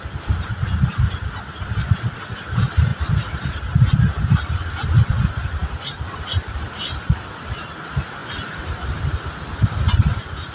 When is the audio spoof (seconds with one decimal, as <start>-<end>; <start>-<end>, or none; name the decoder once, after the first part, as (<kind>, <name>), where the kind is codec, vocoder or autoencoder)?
none